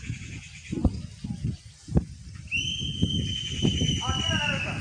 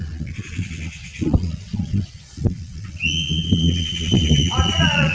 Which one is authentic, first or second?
first